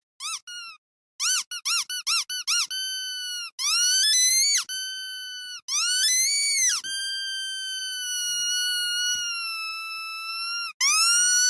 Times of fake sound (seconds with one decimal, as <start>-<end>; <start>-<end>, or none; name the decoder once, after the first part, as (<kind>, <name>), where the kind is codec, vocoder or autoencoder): none